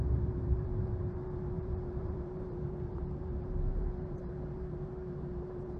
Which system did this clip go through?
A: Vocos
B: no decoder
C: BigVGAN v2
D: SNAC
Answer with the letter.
C